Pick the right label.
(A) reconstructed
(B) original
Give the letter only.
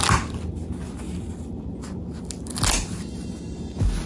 B